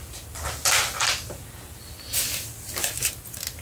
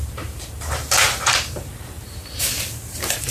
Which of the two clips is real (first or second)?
first